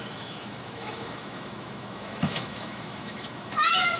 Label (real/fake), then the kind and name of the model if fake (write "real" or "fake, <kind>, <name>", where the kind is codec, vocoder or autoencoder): fake, autoencoder, DAC-VAE